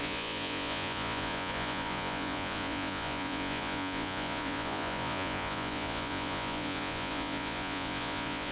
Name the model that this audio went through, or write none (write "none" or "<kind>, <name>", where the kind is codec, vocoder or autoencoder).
vocoder, Vocos